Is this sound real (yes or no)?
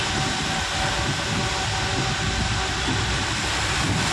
yes